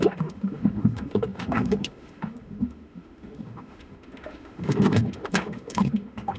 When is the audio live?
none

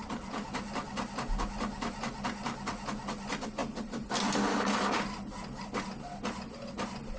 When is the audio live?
0.0-7.2

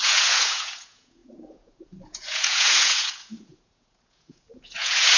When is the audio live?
none

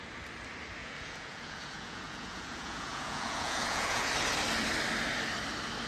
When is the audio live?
0.0-0.8; 4.1-5.9